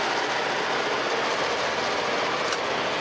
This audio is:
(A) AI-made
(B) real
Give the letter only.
B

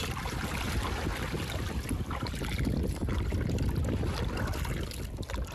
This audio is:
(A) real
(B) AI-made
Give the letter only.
A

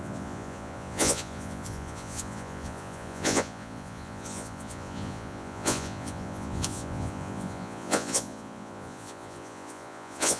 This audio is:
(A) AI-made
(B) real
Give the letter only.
A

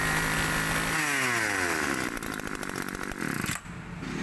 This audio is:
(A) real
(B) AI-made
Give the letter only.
A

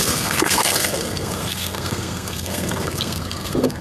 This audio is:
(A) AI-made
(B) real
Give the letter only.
A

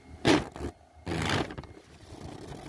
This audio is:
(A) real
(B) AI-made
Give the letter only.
A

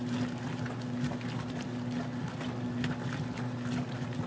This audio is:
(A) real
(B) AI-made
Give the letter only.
A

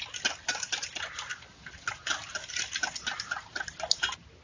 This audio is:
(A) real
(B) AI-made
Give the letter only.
A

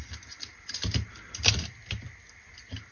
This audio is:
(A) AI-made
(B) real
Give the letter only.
A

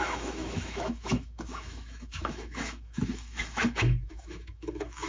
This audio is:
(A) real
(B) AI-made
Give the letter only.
B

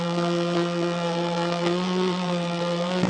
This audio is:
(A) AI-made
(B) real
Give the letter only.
A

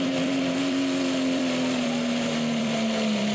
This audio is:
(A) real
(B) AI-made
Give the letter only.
B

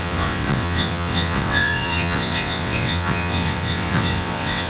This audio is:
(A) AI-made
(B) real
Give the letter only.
A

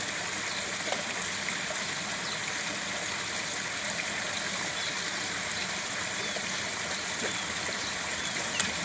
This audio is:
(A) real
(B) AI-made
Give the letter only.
A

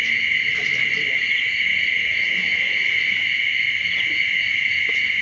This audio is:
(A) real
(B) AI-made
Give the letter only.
A